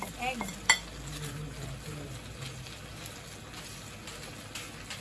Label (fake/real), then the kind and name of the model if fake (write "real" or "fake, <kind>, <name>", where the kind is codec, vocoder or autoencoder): real